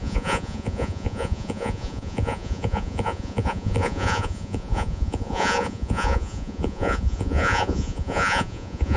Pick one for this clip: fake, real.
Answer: fake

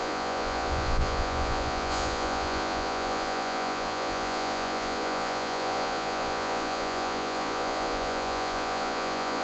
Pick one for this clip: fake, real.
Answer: fake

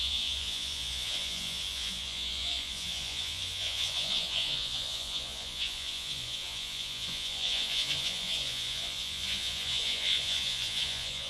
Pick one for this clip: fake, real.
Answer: fake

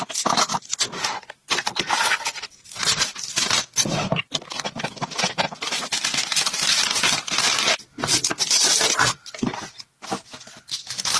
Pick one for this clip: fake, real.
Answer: real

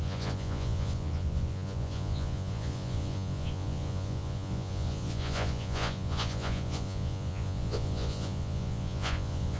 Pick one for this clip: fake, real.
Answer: fake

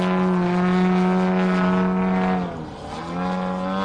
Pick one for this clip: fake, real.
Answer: real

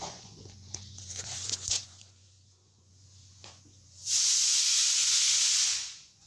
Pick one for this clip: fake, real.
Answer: fake